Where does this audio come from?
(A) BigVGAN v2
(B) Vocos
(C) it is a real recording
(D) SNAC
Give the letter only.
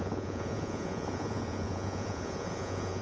B